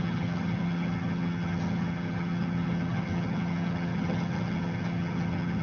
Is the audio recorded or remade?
remade